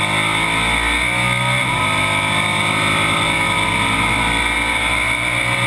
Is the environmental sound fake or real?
real